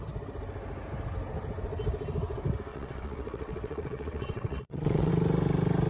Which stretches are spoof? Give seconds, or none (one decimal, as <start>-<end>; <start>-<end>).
2.7-5.1